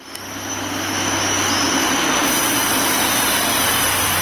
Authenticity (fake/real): real